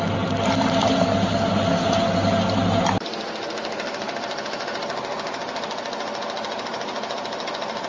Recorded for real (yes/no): yes